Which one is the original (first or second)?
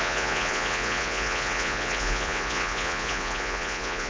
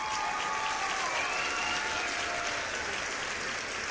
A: second